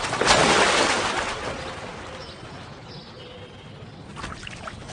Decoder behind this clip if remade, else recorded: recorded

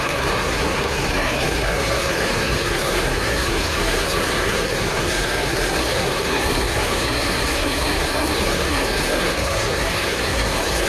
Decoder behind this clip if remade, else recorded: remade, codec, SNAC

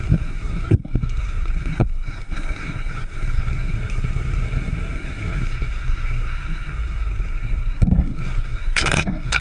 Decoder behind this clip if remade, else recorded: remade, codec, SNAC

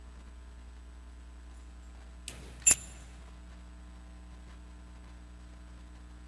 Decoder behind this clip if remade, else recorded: recorded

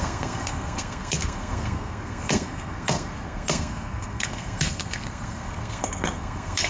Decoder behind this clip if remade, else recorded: remade, codec, SNAC